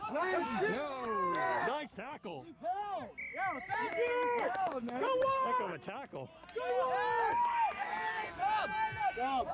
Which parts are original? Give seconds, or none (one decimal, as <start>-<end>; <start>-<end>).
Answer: 2.8-3.9; 5.7-7.3; 8.4-9.0